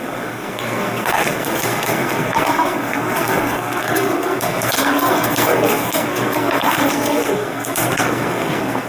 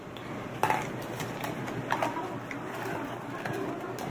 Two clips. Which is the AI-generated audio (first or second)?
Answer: first